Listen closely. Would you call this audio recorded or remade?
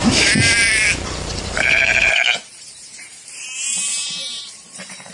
remade